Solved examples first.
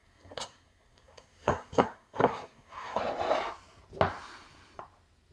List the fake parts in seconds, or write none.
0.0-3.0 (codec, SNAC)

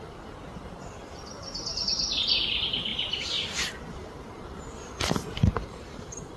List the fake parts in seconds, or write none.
2.9-6.4 (vocoder, BigVGAN v2)

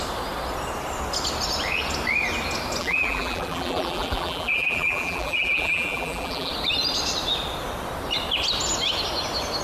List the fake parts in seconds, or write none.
2.8-6.5 (vocoder, BigVGAN v2)